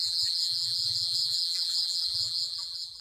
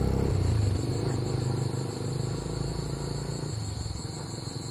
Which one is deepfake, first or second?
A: first